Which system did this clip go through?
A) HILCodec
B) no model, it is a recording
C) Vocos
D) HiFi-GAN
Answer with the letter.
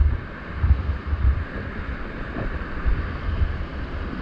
B